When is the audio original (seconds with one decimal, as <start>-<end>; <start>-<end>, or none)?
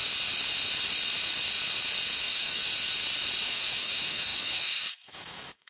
0.0-2.2; 2.7-3.4